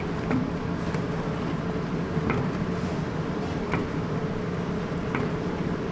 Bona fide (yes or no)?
no